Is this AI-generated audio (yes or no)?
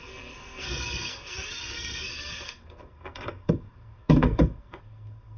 yes